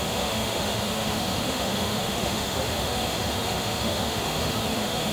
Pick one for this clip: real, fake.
fake